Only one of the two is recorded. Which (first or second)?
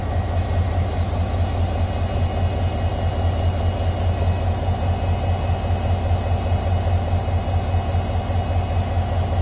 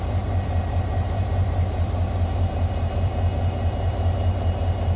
first